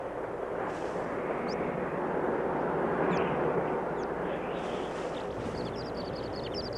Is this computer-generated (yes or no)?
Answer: no